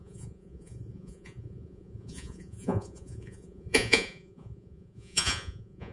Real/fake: fake